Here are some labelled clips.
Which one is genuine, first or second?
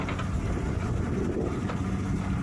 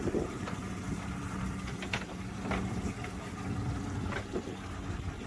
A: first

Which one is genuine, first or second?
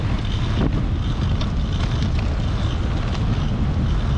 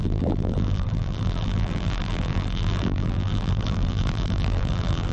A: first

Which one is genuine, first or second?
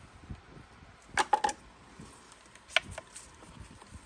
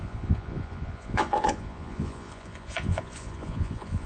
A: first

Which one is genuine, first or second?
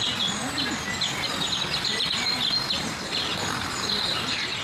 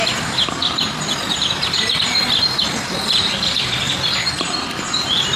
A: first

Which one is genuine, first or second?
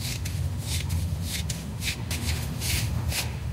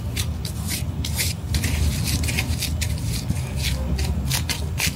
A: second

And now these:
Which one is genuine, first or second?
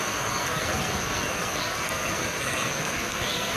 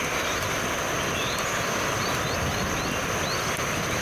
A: second